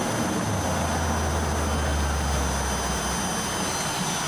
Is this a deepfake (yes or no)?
no